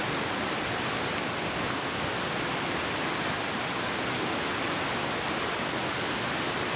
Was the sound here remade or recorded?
recorded